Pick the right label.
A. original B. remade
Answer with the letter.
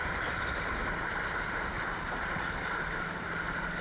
A